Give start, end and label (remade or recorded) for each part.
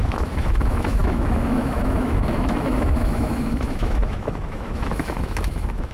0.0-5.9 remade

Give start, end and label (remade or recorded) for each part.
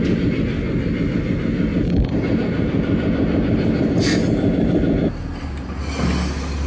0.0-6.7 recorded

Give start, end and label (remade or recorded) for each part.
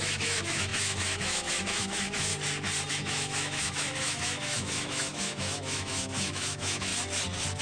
0.0-2.3 remade; 2.3-2.9 recorded; 2.9-6.9 remade; 6.9-7.6 recorded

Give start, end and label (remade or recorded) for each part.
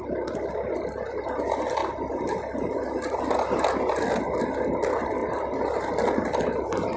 0.0-7.0 recorded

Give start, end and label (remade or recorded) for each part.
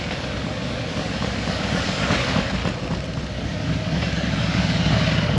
0.0-2.6 remade; 2.6-3.3 recorded; 3.3-5.4 remade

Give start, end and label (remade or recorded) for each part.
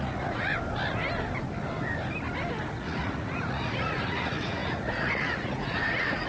0.0-0.5 remade; 0.5-2.7 recorded; 2.7-6.3 remade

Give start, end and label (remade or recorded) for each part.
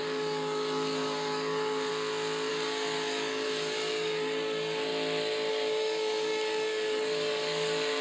0.0-1.9 remade; 1.9-2.5 recorded; 2.5-4.9 remade; 4.9-5.5 recorded; 5.5-8.0 remade